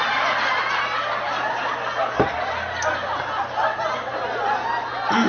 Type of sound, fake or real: real